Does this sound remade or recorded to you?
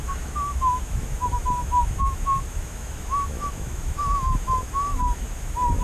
remade